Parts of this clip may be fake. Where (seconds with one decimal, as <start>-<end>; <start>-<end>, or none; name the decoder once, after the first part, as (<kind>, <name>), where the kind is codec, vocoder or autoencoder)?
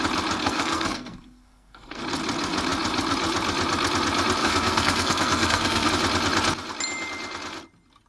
0.4-2.0 (codec, SNAC); 4.4-5.9